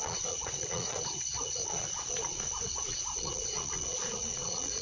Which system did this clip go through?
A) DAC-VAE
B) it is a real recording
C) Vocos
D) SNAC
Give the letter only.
C